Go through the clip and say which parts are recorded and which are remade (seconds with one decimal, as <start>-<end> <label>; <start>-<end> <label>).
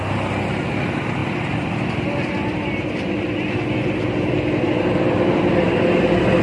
0.0-6.4 recorded